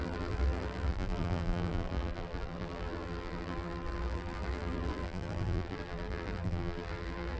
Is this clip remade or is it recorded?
remade